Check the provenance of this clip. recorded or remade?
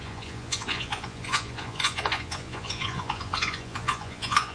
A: remade